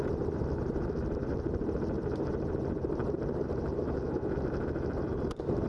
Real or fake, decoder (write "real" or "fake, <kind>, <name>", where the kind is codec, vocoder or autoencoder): fake, vocoder, BigVGAN v2